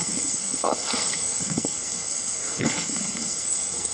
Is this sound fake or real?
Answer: fake